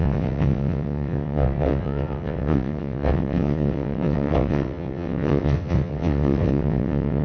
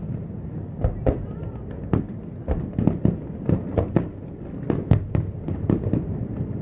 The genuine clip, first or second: second